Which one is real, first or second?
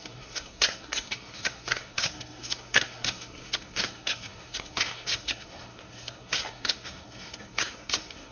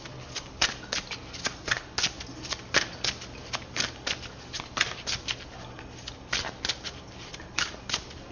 second